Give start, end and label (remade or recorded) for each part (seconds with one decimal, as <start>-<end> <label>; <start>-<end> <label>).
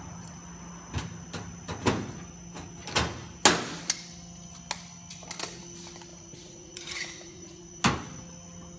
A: 0.0-6.1 recorded; 6.1-7.8 remade; 7.8-8.8 recorded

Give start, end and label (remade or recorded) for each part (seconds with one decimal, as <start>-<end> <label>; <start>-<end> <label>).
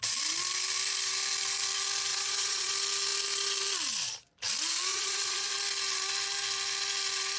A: 0.0-2.1 recorded; 2.1-2.7 remade; 2.7-4.9 recorded; 4.9-5.5 remade; 5.5-7.4 recorded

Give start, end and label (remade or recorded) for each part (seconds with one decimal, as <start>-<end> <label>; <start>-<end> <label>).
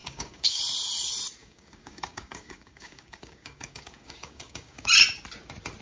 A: 0.0-0.6 remade; 0.6-1.4 recorded; 1.4-4.9 remade; 4.9-5.8 recorded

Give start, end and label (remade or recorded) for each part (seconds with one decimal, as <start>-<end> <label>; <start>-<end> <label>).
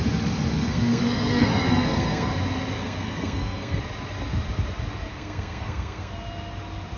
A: 0.0-0.5 recorded; 0.5-2.3 remade; 2.3-2.8 recorded; 2.8-3.8 remade; 3.8-5.1 recorded; 5.1-6.1 remade; 6.1-7.0 recorded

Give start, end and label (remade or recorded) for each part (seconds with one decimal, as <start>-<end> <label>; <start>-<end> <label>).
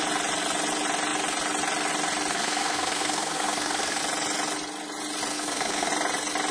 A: 0.0-2.3 recorded; 2.3-4.0 remade; 4.0-5.3 recorded; 5.3-5.9 remade; 5.9-6.5 recorded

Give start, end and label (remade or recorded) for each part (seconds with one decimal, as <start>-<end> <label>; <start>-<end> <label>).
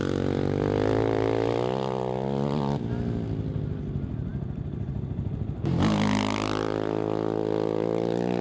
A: 0.0-8.4 recorded